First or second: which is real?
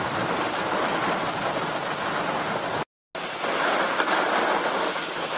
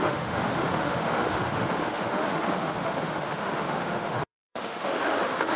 first